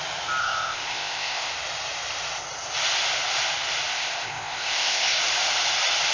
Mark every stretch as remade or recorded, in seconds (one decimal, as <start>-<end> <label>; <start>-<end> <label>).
0.0-0.4 recorded; 0.4-1.5 remade; 1.5-3.9 recorded; 3.9-5.2 remade; 5.2-6.1 recorded